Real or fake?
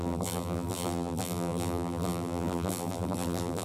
fake